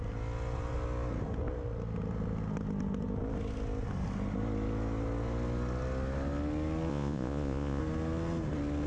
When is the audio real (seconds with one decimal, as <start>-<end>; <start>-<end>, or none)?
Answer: 0.0-6.9; 7.8-8.9